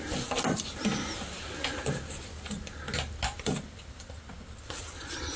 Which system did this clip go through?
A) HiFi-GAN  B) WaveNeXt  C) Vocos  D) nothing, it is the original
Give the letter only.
D